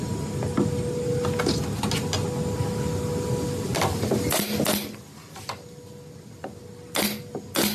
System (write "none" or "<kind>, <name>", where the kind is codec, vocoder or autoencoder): none